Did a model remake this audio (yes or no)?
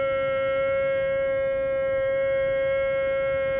no